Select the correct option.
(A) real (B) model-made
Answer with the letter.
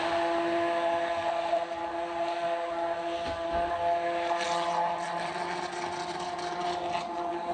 A